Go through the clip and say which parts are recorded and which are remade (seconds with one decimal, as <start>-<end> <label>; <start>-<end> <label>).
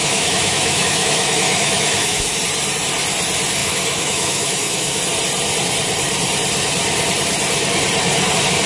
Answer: 0.0-2.4 remade; 2.4-3.6 recorded; 3.6-5.0 remade; 5.0-8.7 recorded